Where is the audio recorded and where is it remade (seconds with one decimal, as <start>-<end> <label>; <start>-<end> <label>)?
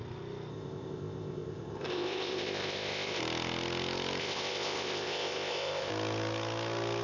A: 0.0-0.5 recorded; 0.5-3.2 remade; 3.2-4.2 recorded; 4.2-5.9 remade; 5.9-7.0 recorded